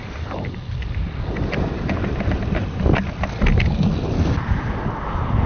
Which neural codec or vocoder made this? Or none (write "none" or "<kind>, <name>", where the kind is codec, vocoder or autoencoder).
none